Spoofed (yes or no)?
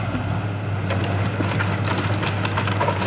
no